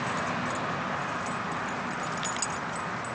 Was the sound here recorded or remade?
recorded